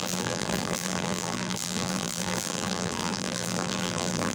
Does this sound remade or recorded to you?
remade